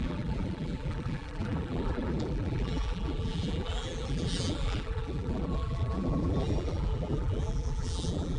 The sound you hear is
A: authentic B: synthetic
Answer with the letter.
B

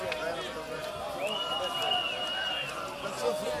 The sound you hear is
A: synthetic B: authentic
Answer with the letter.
B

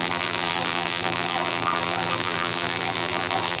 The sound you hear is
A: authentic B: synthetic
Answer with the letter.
B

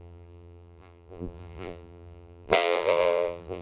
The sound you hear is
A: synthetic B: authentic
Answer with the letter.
A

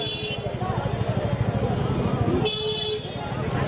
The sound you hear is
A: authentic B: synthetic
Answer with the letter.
A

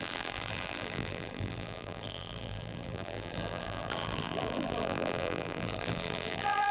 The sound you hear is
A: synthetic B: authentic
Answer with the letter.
A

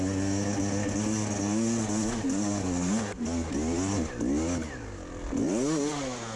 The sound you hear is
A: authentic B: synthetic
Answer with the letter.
A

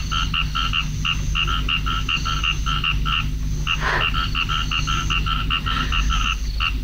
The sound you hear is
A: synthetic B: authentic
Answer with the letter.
B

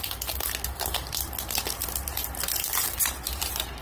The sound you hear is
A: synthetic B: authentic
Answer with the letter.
B